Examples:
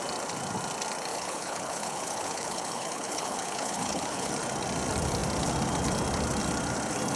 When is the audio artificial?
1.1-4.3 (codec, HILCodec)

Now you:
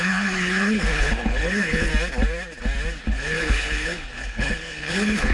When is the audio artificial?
0.0-1.9 (codec, HILCodec); 3.0-5.3

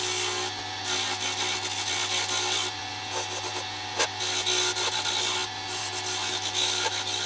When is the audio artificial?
none

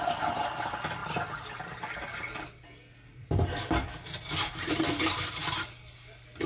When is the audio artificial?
none

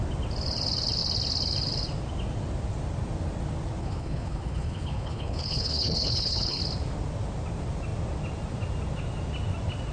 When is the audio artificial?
3.8-6.6 (codec, HILCodec)

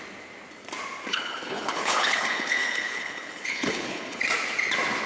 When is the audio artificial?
1.1-4.2 (codec, HILCodec)